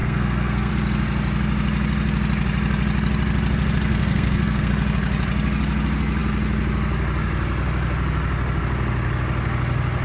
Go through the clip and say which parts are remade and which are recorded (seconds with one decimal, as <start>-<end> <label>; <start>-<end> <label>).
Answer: 0.0-0.7 remade; 0.7-3.9 recorded; 3.9-4.7 remade; 4.7-10.0 recorded